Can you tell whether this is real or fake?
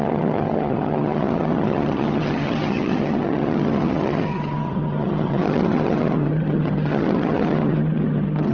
fake